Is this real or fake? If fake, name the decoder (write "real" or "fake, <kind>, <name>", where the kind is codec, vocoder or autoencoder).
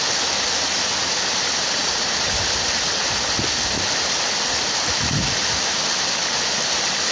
real